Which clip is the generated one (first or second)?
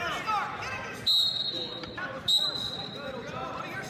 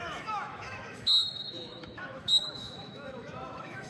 second